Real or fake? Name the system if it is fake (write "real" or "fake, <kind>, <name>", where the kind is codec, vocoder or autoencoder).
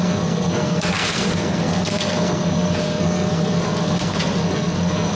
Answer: fake, codec, SNAC